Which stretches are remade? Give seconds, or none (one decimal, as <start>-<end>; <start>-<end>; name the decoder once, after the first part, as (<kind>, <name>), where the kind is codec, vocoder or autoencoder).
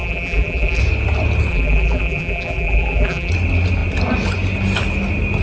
0.0-0.8 (vocoder, BigVGAN v2); 1.5-3.3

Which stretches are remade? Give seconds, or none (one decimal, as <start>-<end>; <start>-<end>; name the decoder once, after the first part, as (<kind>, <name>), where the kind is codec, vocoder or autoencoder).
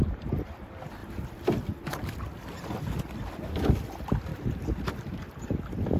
none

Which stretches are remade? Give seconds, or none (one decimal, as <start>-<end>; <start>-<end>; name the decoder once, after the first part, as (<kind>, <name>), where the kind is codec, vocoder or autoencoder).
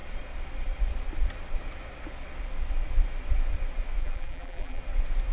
4.0-4.8 (vocoder, BigVGAN v2)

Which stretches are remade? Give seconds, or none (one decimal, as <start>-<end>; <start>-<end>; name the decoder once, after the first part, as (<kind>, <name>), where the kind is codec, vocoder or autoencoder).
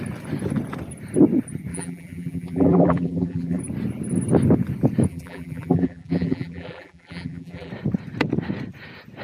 1.7-3.6 (vocoder, BigVGAN v2); 5.1-7.7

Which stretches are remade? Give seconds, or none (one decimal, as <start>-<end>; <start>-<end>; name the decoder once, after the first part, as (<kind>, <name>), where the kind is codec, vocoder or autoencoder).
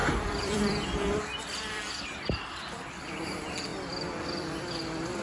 0.0-1.8 (vocoder, BigVGAN v2)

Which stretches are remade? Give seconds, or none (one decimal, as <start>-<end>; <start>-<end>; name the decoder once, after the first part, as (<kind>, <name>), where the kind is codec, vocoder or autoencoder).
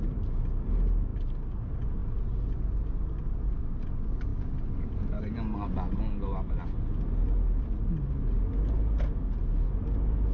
none